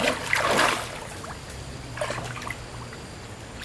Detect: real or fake real